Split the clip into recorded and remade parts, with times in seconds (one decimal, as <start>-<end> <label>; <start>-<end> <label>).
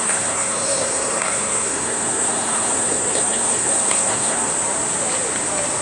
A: 0.0-4.5 remade; 4.5-5.8 recorded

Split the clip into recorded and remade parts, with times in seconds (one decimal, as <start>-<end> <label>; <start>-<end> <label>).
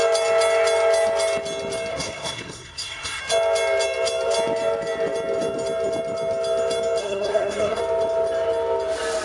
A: 0.0-1.9 recorded; 1.9-3.2 remade; 3.2-7.0 recorded; 7.0-7.8 remade; 7.8-9.2 recorded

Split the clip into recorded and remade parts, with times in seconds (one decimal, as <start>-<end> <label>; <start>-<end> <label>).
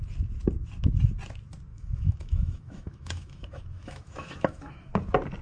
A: 0.0-1.7 recorded; 1.7-4.9 remade; 4.9-5.4 recorded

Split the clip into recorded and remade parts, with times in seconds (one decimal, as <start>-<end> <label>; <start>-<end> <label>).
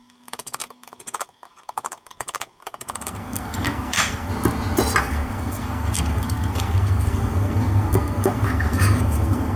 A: 0.0-4.3 remade; 4.3-5.0 recorded; 5.0-9.6 remade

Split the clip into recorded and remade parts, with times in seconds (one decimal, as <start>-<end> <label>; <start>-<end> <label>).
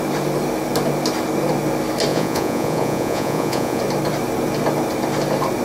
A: 0.0-2.1 recorded; 2.1-3.8 remade; 3.8-5.6 recorded